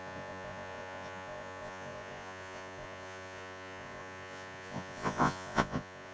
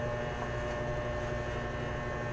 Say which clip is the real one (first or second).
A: second